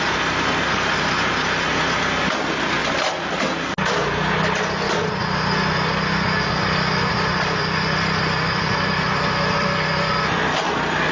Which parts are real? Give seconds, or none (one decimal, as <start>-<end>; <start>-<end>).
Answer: 2.8-7.1